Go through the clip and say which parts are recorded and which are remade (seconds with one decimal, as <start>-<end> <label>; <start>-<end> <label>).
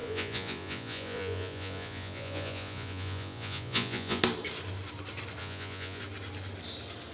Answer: 0.0-4.2 remade; 4.2-5.4 recorded; 5.4-6.0 remade; 6.0-7.1 recorded